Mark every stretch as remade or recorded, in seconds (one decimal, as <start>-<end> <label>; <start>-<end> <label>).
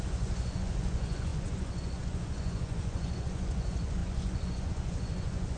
0.0-5.6 remade